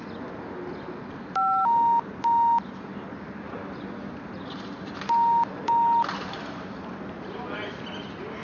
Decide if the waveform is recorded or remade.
recorded